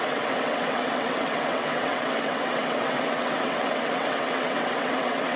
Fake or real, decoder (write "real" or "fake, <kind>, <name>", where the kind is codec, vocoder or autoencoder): fake, vocoder, WaveNeXt